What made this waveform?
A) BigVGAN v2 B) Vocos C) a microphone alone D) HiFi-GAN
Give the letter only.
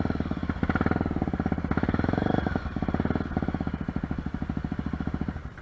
C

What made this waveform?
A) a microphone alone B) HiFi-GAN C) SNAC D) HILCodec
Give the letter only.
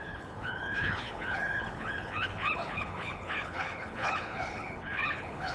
D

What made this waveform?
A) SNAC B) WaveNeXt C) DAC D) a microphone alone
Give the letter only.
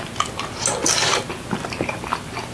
D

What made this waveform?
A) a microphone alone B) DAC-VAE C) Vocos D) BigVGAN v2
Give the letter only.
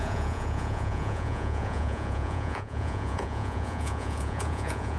C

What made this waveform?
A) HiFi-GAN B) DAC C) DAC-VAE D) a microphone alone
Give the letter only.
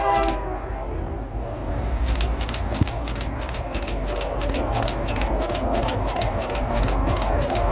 B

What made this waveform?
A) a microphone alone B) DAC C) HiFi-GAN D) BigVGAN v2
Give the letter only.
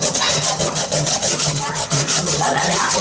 C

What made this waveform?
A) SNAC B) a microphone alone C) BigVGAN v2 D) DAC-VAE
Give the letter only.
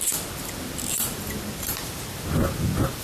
B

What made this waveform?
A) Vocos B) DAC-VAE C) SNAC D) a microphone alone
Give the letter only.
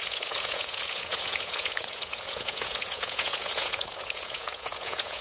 A